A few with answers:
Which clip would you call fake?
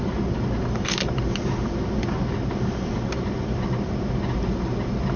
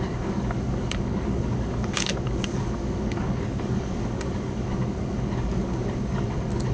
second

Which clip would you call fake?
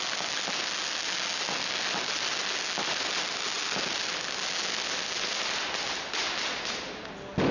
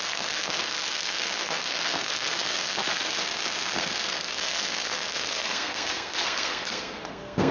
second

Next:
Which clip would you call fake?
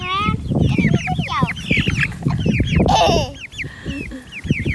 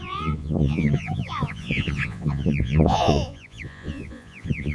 second